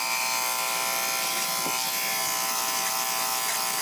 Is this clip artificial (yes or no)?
no